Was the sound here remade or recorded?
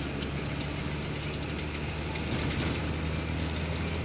recorded